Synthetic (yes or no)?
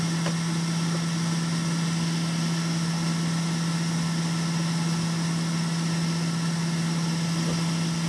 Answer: no